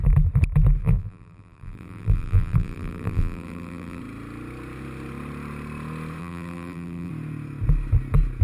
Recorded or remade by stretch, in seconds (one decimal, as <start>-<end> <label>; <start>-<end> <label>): 0.0-0.8 recorded; 0.8-4.0 remade; 4.0-6.2 recorded; 6.2-7.1 remade; 7.1-8.4 recorded